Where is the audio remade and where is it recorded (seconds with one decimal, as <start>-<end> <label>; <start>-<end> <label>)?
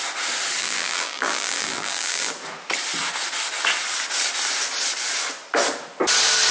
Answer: 0.0-0.6 recorded; 0.6-2.3 remade; 2.3-6.5 recorded